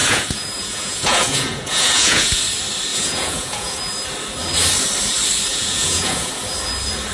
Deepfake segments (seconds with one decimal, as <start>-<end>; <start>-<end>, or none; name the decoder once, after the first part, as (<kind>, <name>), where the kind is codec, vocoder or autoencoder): 0.0-2.4 (vocoder, Vocos); 2.9-3.8; 5.5-6.3